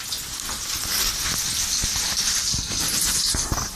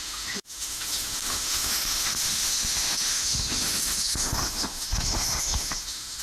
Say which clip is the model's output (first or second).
second